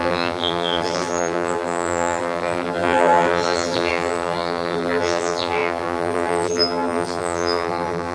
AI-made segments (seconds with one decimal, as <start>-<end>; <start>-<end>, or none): 0.0-8.1